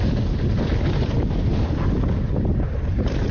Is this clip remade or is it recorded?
recorded